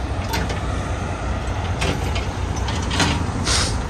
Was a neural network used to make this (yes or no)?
no